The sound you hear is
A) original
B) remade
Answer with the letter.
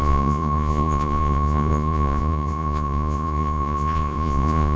B